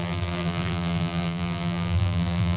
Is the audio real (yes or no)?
no